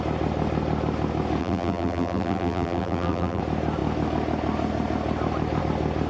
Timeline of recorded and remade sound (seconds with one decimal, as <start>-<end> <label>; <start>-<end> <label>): 0.0-1.4 recorded; 1.4-3.4 remade; 3.4-6.1 recorded

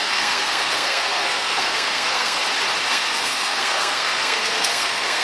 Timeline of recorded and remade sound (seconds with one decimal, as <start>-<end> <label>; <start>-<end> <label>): 0.0-2.4 remade; 2.4-2.9 recorded; 2.9-5.2 remade

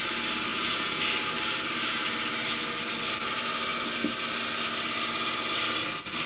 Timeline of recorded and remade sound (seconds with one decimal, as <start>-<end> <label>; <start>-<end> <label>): 0.0-0.5 recorded; 0.5-1.0 remade; 1.0-6.3 recorded